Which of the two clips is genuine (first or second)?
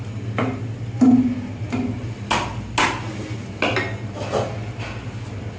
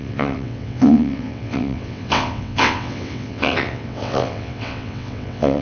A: first